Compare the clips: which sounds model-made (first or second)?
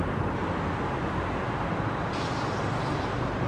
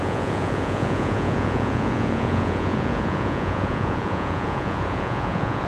second